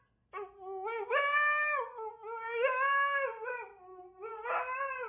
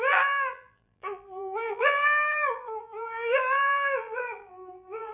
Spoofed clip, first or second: second